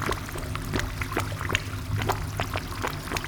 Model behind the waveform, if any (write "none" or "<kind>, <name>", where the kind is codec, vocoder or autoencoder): none